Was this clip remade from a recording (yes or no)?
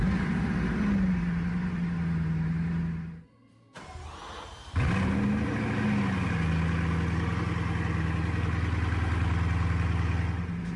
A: no